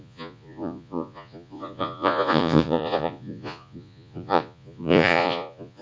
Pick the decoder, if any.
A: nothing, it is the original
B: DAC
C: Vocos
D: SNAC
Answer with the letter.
C